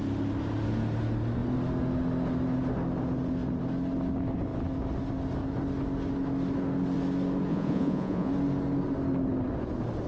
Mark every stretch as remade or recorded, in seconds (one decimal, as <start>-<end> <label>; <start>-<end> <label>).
0.0-7.5 recorded; 7.5-8.3 remade; 8.3-10.1 recorded